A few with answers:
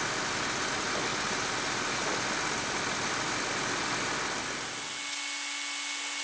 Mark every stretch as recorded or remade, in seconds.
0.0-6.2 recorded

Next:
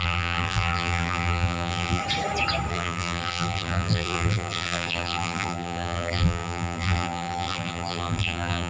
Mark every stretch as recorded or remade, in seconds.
0.0-2.0 remade; 2.0-2.7 recorded; 2.7-8.7 remade

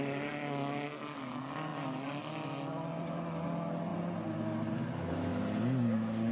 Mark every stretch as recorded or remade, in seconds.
0.0-3.9 recorded; 3.9-4.7 remade; 4.7-6.3 recorded